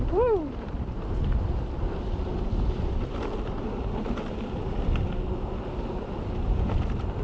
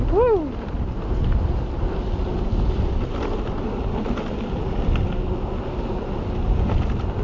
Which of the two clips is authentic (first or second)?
second